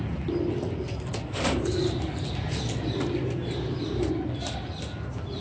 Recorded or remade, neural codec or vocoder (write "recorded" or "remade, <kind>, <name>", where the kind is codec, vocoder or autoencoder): recorded